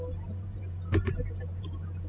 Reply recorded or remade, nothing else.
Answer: remade